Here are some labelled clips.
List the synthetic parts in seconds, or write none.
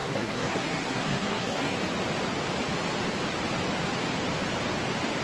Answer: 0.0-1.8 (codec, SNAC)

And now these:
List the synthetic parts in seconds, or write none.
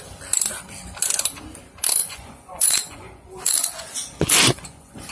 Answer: 2.0-5.1 (vocoder, Vocos)